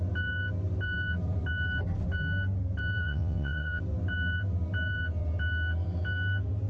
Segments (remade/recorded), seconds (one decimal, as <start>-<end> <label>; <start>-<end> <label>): 0.0-3.0 recorded; 3.0-3.8 remade; 3.8-6.7 recorded